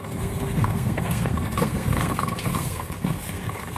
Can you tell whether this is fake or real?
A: fake